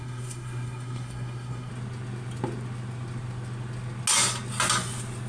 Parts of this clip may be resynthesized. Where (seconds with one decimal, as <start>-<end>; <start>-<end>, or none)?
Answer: 0.0-1.7